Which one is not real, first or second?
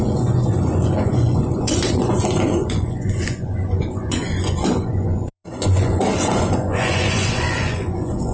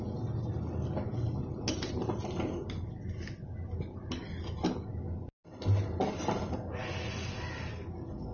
first